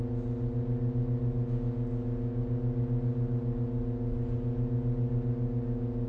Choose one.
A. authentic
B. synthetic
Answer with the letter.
A